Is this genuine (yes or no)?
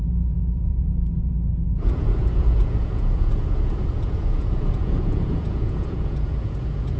no